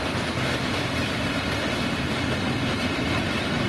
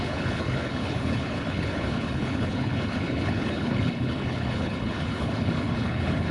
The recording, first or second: first